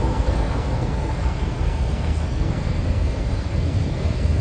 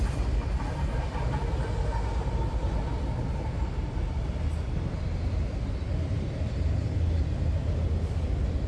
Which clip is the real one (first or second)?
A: second